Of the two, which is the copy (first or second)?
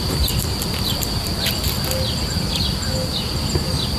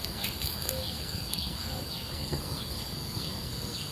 second